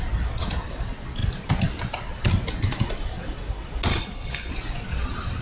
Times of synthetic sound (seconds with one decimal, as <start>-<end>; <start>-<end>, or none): 3.9-4.5